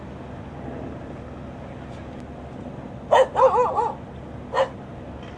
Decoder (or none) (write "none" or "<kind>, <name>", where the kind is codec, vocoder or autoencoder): none